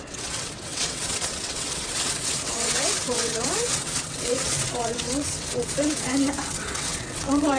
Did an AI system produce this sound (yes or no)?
yes